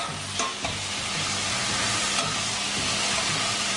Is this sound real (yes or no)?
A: yes